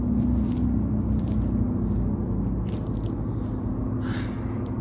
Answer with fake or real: real